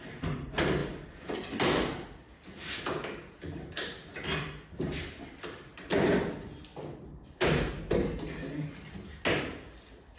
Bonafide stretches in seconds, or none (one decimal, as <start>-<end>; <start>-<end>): 0.0-0.8; 5.9-10.2

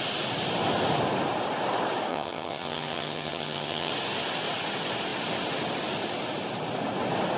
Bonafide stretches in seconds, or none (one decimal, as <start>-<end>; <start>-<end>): 0.0-2.1; 3.9-7.4

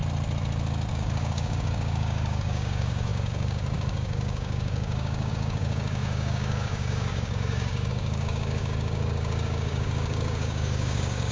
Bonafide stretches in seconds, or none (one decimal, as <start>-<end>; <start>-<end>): 0.0-0.9

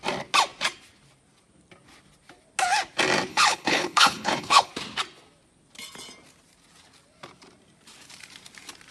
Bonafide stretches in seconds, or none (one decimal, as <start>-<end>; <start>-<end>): 0.0-3.3; 4.7-8.9

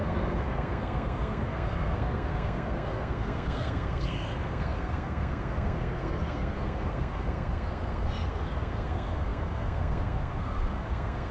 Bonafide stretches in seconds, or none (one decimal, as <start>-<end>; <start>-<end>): none